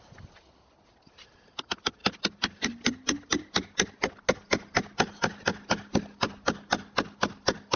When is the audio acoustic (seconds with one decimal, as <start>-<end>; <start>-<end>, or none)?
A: 0.0-7.8